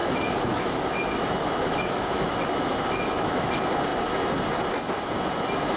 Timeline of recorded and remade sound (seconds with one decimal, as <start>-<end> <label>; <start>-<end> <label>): 0.0-3.5 remade; 3.5-5.8 recorded